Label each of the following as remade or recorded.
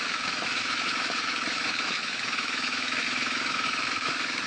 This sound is remade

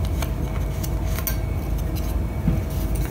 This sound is recorded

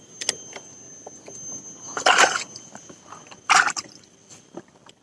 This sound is recorded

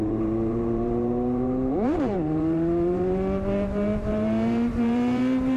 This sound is remade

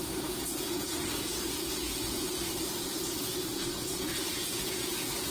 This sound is remade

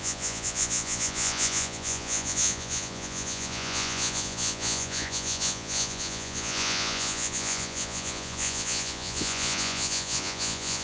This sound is remade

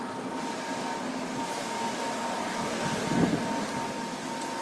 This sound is recorded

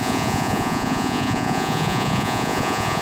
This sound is remade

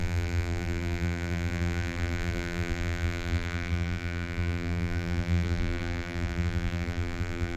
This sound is remade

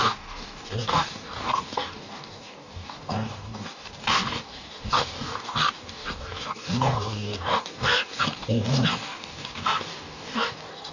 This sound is remade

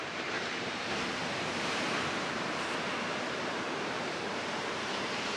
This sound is remade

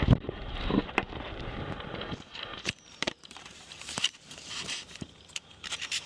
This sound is remade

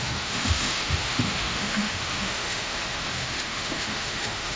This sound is remade